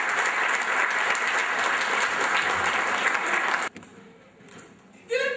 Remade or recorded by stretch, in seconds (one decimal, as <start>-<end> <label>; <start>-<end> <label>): 0.0-5.4 recorded